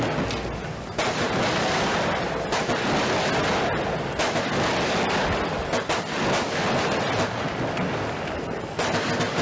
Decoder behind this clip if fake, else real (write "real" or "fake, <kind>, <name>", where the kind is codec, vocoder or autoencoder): real